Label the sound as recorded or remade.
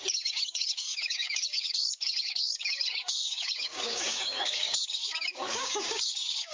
remade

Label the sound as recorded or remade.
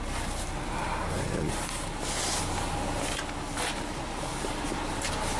recorded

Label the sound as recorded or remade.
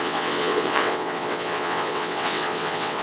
remade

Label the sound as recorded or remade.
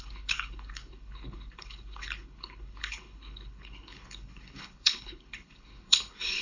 remade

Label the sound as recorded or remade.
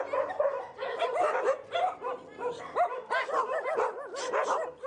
recorded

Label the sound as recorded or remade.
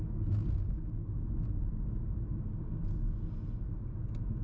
recorded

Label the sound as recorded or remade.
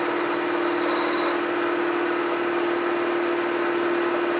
recorded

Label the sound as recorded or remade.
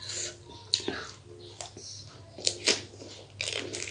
recorded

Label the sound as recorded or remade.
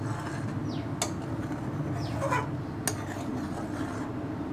recorded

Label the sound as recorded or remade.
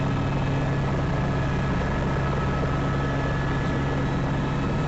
recorded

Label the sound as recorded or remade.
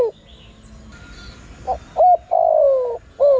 recorded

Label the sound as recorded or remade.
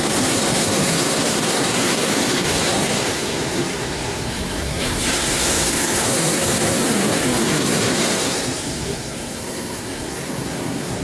remade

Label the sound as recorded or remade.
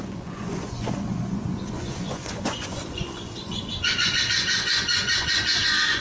remade